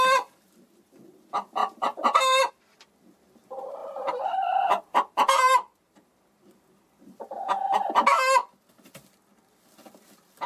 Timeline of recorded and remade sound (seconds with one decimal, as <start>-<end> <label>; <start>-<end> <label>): 0.0-1.6 recorded; 1.6-2.5 remade; 2.5-3.8 recorded; 3.8-6.3 remade; 6.3-10.5 recorded